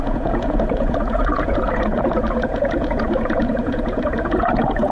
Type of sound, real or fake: fake